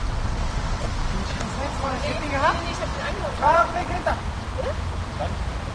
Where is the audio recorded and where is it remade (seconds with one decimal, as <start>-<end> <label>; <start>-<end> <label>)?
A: 0.0-0.9 remade; 0.9-1.6 recorded; 1.6-2.3 remade; 2.3-2.9 recorded; 2.9-4.2 remade; 4.2-5.7 recorded